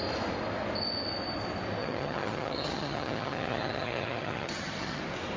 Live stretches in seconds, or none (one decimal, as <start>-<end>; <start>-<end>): 0.0-1.8; 5.0-5.4